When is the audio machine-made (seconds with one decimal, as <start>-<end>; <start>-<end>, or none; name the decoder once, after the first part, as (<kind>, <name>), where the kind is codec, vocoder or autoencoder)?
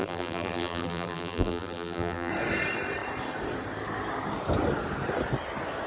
0.0-2.3 (vocoder, BigVGAN v2)